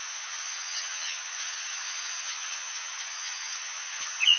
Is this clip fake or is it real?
fake